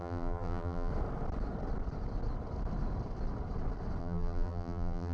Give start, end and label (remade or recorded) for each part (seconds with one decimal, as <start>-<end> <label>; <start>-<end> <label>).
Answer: 0.0-0.9 remade; 0.9-4.0 recorded; 4.0-5.1 remade